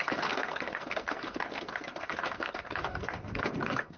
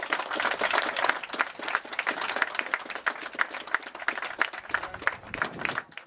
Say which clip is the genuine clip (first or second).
second